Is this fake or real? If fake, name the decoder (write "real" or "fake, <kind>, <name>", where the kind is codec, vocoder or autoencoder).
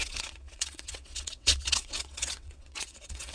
fake, vocoder, WaveNeXt